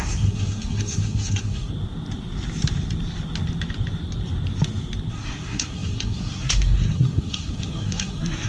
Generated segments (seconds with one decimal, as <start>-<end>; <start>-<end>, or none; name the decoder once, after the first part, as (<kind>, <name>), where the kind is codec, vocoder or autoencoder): 0.0-1.7 (codec, SNAC); 5.1-8.5